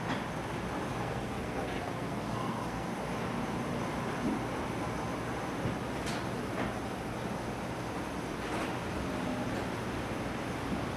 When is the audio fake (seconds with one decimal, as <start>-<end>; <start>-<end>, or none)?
0.9-2.9